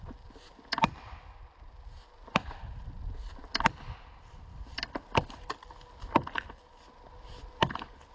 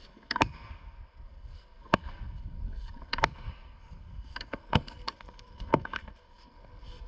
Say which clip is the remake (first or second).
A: second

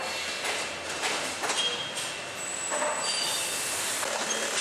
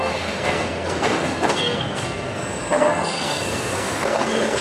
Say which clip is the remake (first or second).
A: second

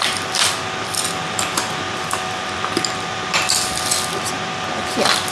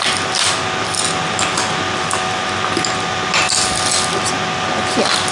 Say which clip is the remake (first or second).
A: first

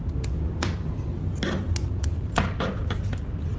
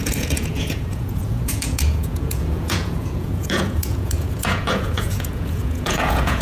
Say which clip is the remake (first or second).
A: second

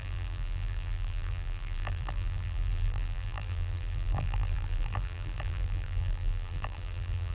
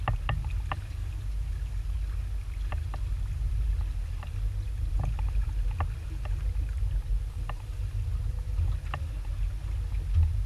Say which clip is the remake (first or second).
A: first